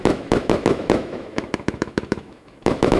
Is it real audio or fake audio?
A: fake